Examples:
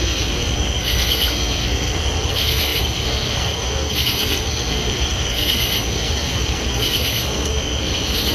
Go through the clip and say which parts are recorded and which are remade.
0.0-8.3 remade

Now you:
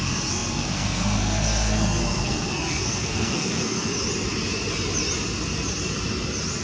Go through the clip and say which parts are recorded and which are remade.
0.0-3.9 remade; 3.9-6.6 recorded